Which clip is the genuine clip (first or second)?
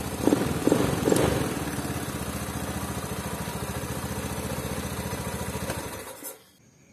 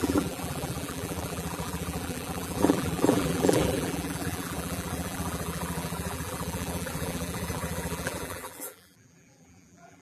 first